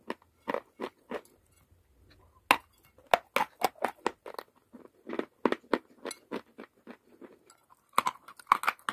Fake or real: real